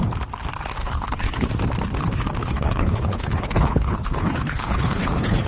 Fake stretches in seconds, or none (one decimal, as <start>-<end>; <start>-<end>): 0.8-1.5; 2.4-5.5

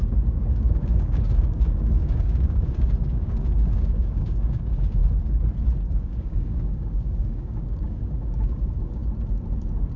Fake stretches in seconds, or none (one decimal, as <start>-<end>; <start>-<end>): 0.0-5.0; 5.9-9.0